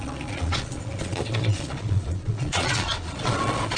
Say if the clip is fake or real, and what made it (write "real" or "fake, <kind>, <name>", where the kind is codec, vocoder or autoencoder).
fake, vocoder, Vocos